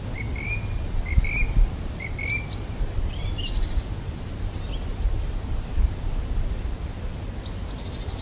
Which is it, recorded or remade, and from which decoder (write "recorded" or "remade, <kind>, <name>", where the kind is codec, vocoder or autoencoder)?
recorded